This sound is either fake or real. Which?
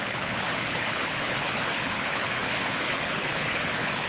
fake